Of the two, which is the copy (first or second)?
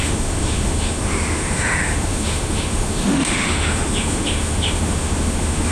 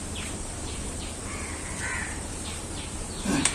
first